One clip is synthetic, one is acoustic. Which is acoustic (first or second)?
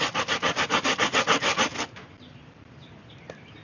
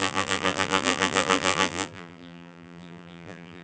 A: first